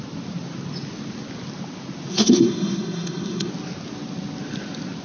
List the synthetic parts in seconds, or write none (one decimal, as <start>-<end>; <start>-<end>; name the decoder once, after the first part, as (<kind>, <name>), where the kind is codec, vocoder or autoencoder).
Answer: 2.1-3.5 (codec, SNAC)